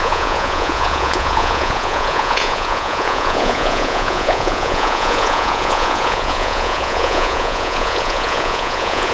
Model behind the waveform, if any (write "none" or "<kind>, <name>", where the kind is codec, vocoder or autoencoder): vocoder, Vocos